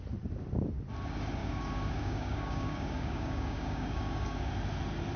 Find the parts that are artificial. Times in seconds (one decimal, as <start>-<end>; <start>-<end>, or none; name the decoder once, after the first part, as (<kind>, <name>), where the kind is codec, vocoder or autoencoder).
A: 1.4-4.5 (codec, DAC)